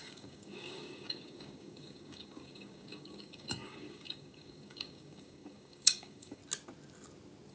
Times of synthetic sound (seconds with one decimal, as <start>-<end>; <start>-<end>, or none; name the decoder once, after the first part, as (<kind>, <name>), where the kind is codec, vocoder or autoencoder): 0.0-6.4 (codec, DAC)